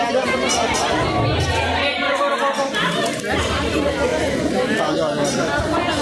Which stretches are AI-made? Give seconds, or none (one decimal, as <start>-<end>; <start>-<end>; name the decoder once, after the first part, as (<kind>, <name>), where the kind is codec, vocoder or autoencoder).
4.1-5.0 (vocoder, BigVGAN v2)